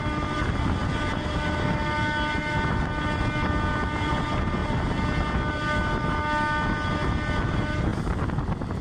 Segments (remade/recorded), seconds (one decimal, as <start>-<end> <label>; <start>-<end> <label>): 0.0-8.8 recorded